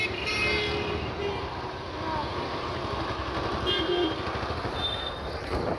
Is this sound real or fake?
real